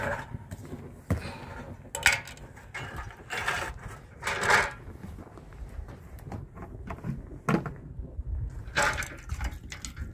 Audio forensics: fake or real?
real